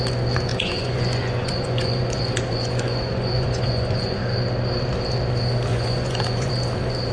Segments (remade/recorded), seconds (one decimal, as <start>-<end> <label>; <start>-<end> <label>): 0.0-0.5 recorded; 0.5-4.2 remade; 4.2-5.7 recorded; 5.7-6.5 remade; 6.5-7.1 recorded